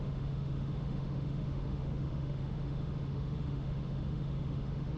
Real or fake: fake